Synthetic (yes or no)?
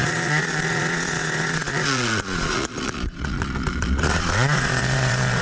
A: yes